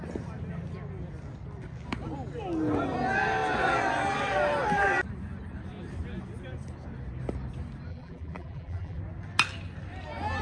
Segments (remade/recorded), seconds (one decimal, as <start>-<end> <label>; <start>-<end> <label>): 0.0-7.9 recorded; 7.9-9.0 remade; 9.0-10.4 recorded